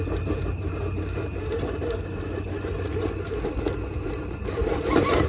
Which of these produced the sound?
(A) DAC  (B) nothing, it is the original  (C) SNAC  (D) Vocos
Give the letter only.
B